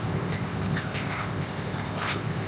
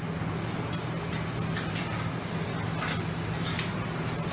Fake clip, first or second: first